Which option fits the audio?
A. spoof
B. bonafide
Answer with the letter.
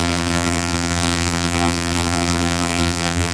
A